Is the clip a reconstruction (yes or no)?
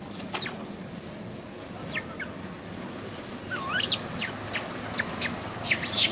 no